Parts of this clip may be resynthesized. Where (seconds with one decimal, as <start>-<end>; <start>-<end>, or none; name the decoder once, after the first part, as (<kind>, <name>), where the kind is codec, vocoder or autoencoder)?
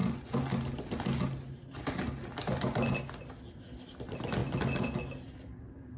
none